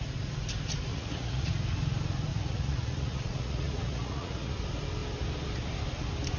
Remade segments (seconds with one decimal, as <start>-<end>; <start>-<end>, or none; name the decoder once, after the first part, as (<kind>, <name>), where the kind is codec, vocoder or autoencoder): 0.9-1.5 (vocoder, Vocos); 2.3-4.5